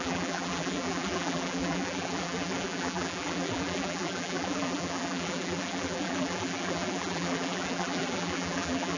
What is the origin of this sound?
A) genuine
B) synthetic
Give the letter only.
B